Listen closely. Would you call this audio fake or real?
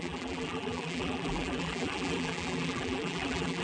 fake